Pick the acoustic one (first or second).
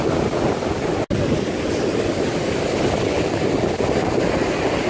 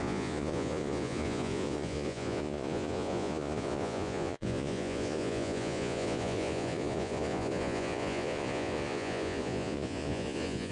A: first